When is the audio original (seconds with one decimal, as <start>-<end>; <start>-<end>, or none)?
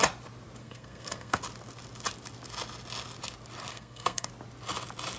0.0-0.6; 1.4-3.7; 4.3-5.2